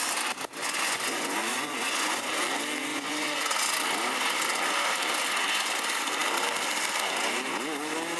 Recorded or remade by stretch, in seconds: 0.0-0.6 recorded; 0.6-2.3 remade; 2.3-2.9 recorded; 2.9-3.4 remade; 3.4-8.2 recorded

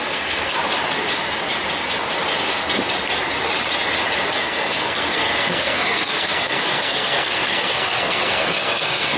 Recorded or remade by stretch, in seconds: 0.0-0.6 remade; 0.6-4.3 recorded; 4.3-9.2 remade

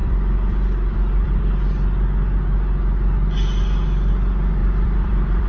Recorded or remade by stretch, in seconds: 0.0-1.4 remade; 1.4-4.6 recorded; 4.6-5.5 remade

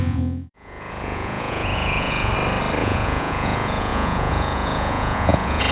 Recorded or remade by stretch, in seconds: 0.0-2.3 remade; 2.3-2.8 recorded; 2.8-5.7 remade

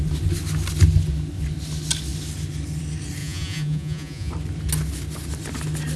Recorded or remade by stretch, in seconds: 0.0-3.2 recorded; 3.2-4.3 remade; 4.3-6.0 recorded

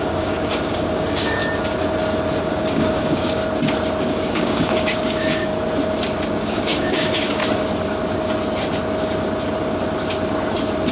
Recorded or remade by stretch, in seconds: 0.0-1.4 remade; 1.4-2.4 recorded; 2.4-3.4 remade; 3.4-4.0 recorded; 4.0-5.5 remade; 5.5-6.4 recorded; 6.4-7.4 remade; 7.4-10.9 recorded

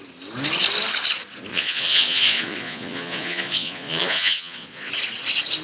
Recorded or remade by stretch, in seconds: 0.0-1.5 recorded; 1.5-4.9 remade; 4.9-5.6 recorded